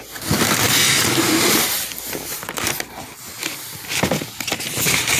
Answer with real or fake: real